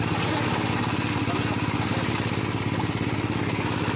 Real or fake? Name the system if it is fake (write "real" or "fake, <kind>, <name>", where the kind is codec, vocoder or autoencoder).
real